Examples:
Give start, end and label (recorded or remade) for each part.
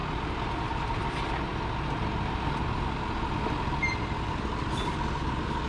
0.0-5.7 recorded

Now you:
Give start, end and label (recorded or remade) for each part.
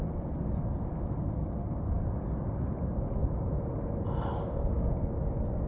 0.0-4.3 recorded; 4.3-5.1 remade; 5.1-5.7 recorded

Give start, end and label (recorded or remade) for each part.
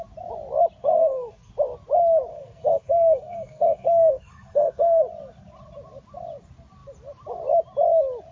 0.0-0.8 recorded; 0.8-1.5 remade; 1.5-2.3 recorded; 2.3-5.0 remade; 5.0-8.3 recorded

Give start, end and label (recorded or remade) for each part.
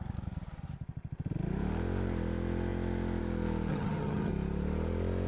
0.0-3.7 recorded; 3.7-4.3 remade; 4.3-5.3 recorded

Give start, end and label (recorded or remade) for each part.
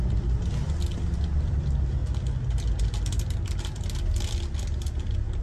0.0-5.4 recorded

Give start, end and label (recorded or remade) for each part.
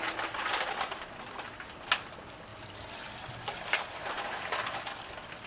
0.0-5.5 recorded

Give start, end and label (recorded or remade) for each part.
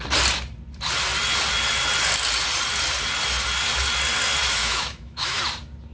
0.0-4.6 recorded; 4.6-5.4 remade; 5.4-5.9 recorded